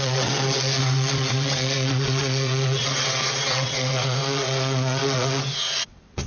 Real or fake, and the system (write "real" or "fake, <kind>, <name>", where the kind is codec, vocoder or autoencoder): fake, vocoder, WaveNeXt